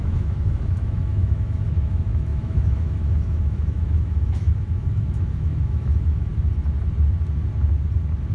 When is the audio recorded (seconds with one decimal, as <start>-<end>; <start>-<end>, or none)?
6.3-8.3